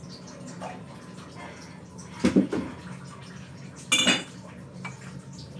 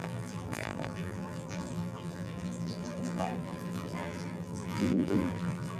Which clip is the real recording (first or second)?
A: first